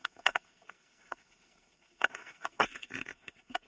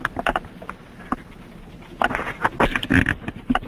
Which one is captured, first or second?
second